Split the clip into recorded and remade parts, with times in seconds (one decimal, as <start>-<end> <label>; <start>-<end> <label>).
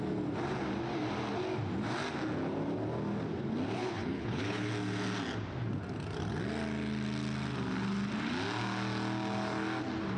0.0-3.8 recorded; 3.8-4.7 remade; 4.7-10.2 recorded